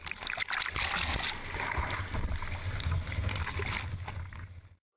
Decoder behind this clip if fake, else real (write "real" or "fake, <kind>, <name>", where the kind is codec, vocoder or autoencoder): real